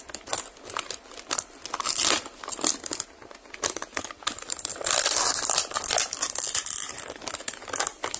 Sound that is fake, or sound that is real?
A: real